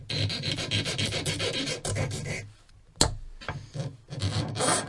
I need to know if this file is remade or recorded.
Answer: recorded